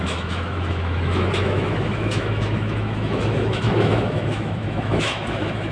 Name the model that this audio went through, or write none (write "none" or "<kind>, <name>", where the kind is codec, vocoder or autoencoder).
autoencoder, DAC-VAE